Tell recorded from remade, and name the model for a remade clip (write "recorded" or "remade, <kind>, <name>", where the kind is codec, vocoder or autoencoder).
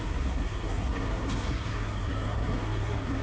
remade, codec, SNAC